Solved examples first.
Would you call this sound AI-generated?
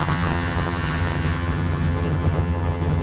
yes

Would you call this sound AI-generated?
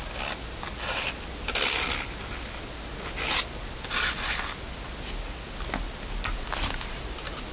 no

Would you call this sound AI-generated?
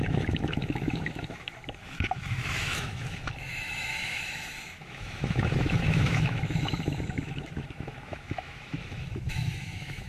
yes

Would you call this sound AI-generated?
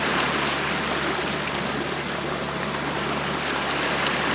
no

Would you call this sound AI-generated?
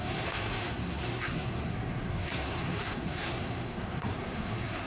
yes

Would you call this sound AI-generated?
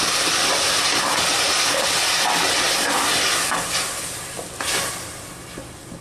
no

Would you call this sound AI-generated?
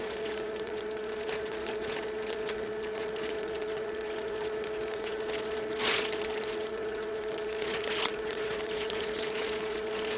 yes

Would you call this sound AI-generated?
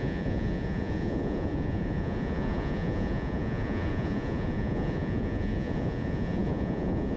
yes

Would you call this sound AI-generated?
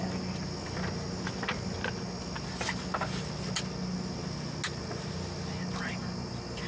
no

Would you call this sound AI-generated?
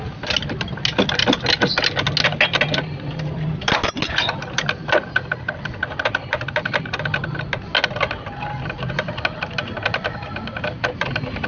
no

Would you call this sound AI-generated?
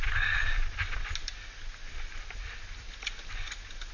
no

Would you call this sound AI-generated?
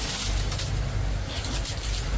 no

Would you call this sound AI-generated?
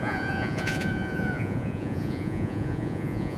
yes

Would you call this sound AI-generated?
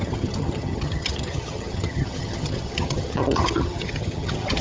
yes